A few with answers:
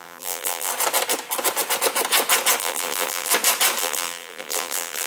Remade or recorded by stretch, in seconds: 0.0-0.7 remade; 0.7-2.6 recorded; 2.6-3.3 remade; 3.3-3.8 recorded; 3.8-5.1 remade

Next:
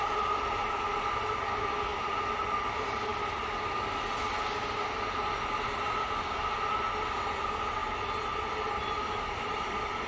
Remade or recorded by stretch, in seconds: 0.0-10.1 recorded

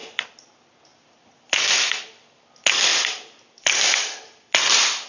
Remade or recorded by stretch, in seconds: 0.0-0.5 remade; 0.5-0.9 recorded; 0.9-2.0 remade; 2.0-2.9 recorded; 2.9-4.5 remade; 4.5-5.1 recorded

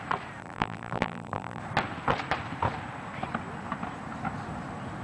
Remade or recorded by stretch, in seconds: 0.0-0.4 recorded; 0.4-1.6 remade; 1.6-5.0 recorded